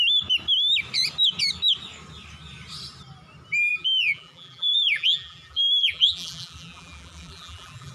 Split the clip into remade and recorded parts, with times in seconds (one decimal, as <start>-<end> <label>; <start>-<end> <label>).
0.0-3.7 recorded; 3.7-7.9 remade